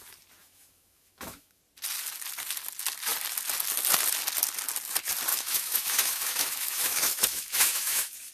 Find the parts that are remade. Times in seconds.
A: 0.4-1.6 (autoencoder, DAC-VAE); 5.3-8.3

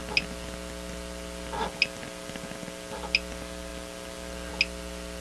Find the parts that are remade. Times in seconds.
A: none

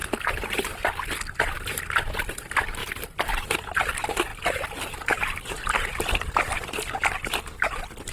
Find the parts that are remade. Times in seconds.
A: 0.0-1.1 (vocoder, BigVGAN v2); 2.8-3.5; 4.3-7.1

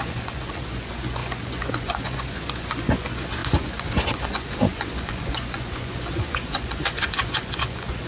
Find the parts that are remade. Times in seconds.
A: 0.0-8.1 (vocoder, Vocos)

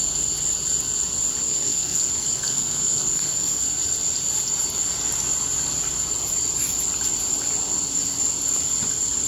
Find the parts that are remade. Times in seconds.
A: 1.5-3.8 (codec, SNAC)